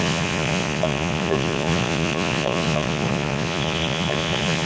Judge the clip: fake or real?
fake